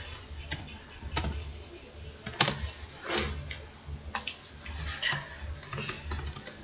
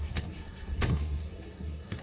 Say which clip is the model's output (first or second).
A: second